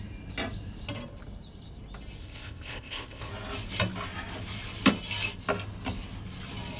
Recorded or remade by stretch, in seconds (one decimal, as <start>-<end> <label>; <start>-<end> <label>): 0.0-2.2 recorded; 2.2-3.3 remade; 3.3-6.8 recorded